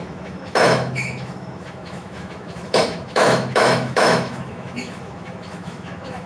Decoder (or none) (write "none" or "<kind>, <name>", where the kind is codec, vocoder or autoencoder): autoencoder, DAC-VAE